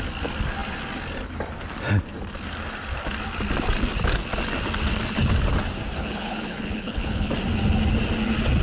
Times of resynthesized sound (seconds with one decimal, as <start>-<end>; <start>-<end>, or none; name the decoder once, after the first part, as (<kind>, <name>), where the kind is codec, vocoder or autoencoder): 5.9-7.3 (codec, HILCodec)